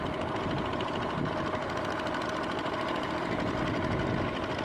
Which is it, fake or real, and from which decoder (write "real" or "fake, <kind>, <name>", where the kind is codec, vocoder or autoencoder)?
real